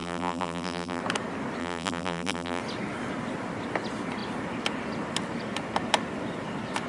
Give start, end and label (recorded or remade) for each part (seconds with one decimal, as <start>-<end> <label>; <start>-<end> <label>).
0.0-1.0 remade; 1.0-1.6 recorded; 1.6-2.6 remade; 2.6-6.9 recorded